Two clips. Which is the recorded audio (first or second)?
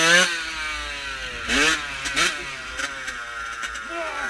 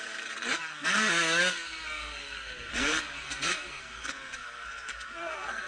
first